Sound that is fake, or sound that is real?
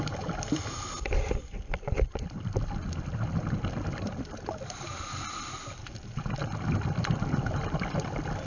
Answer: real